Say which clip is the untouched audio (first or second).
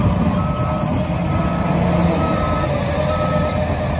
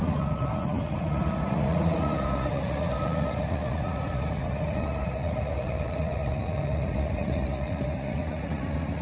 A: first